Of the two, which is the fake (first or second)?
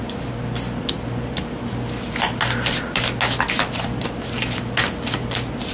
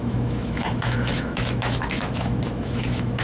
second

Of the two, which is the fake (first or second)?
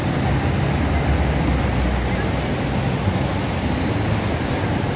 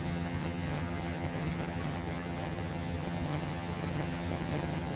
second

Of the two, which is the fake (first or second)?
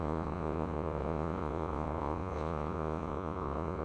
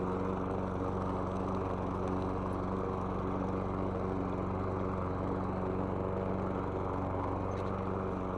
first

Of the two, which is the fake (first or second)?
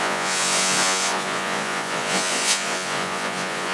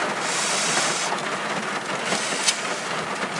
first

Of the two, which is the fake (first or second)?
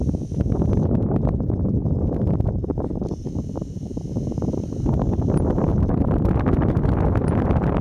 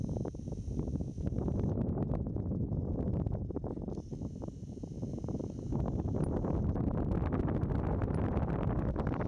first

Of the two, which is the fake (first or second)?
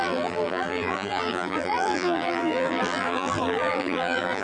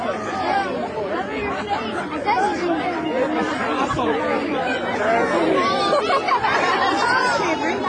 first